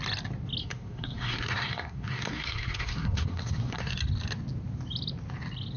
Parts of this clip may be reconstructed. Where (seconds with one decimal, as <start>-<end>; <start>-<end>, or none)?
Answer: 0.6-3.9